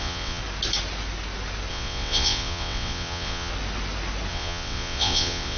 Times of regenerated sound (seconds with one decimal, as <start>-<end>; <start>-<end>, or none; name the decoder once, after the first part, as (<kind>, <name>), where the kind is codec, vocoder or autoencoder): 0.0-0.4 (vocoder, WaveNeXt); 1.7-3.5; 4.3-5.6